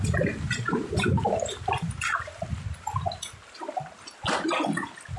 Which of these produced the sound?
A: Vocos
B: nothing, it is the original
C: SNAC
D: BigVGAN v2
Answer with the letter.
B